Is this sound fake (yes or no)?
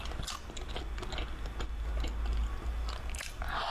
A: no